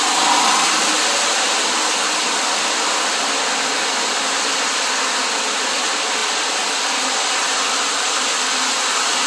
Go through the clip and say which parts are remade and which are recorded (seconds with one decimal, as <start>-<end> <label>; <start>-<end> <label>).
0.0-6.2 recorded; 6.2-6.8 remade; 6.8-9.3 recorded